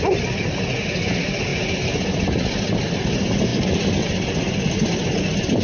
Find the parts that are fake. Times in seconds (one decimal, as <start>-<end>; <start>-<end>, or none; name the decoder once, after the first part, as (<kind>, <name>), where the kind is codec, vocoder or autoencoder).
none